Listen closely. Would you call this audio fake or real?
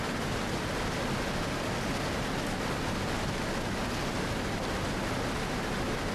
real